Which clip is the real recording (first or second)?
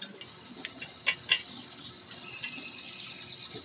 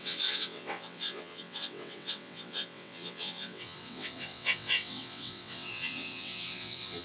first